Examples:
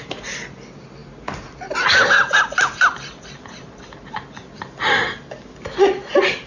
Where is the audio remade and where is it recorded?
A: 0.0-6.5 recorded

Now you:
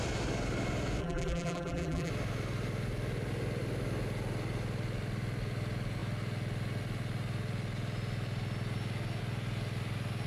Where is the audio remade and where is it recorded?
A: 0.0-1.0 recorded; 1.0-2.1 remade; 2.1-10.3 recorded

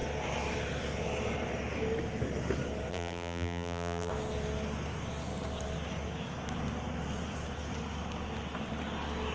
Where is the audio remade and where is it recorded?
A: 0.0-2.9 recorded; 2.9-4.1 remade; 4.1-9.3 recorded

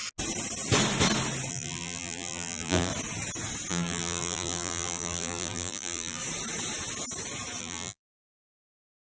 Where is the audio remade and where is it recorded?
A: 0.0-1.5 recorded; 1.5-2.9 remade; 2.9-3.7 recorded; 3.7-6.2 remade; 6.2-7.6 recorded; 7.6-9.1 remade

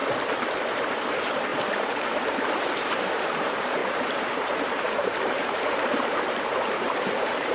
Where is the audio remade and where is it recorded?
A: 0.0-1.1 recorded; 1.1-7.5 remade

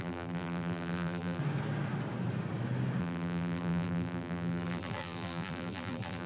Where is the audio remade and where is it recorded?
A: 0.0-1.4 remade; 1.4-3.0 recorded; 3.0-6.3 remade

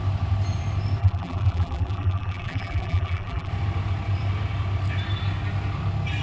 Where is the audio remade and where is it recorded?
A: 0.0-1.0 recorded; 1.0-3.5 remade; 3.5-6.2 recorded

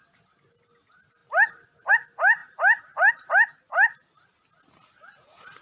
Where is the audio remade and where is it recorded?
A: 0.0-5.6 recorded